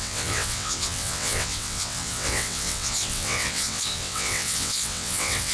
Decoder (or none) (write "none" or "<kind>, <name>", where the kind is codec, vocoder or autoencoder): vocoder, WaveNeXt